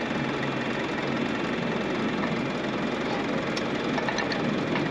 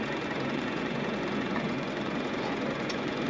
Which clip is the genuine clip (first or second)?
first